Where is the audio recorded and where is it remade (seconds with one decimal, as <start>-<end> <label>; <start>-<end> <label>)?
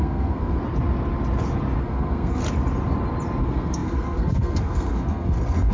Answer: 0.0-0.6 remade; 0.6-1.8 recorded; 1.8-2.4 remade; 2.4-3.4 recorded; 3.4-5.7 remade